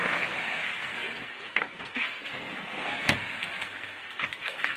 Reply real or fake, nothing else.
fake